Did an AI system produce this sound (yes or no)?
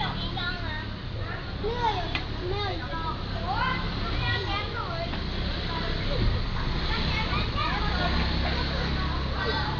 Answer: no